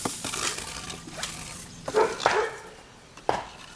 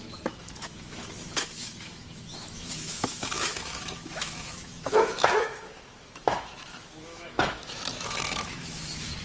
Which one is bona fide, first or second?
first